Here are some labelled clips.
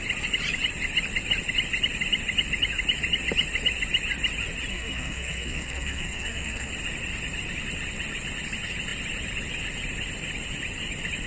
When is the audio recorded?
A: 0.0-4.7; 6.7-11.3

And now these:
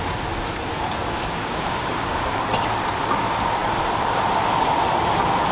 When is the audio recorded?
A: 0.0-0.7; 2.4-5.5

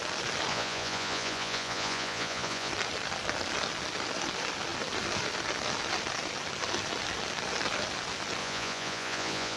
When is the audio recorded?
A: 0.0-0.5; 2.7-8.4

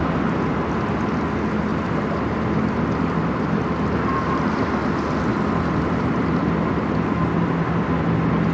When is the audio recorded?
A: 0.0-1.7; 3.3-5.3; 6.7-8.5